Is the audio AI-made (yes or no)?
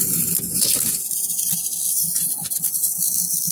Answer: no